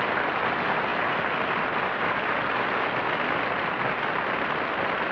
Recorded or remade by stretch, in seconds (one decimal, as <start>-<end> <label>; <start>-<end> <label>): 0.0-5.1 recorded